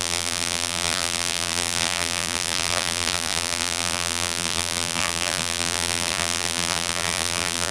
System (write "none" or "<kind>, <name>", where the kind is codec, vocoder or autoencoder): vocoder, BigVGAN v2